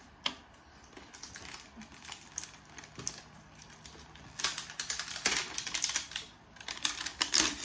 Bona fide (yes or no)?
yes